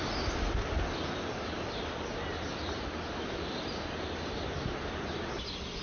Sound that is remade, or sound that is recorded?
recorded